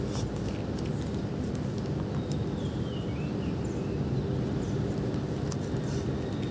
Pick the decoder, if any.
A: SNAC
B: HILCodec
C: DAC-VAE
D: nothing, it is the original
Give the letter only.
D